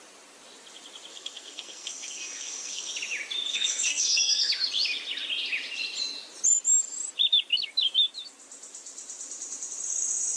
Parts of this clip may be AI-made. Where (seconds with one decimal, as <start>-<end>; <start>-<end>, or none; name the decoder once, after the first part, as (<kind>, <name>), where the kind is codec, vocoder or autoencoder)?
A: 1.1-2.9 (codec, SNAC); 3.5-4.5